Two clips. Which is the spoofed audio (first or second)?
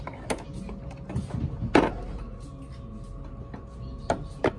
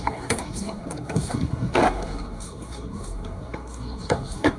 second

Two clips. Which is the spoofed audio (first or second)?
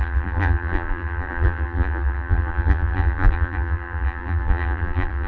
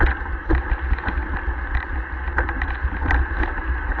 first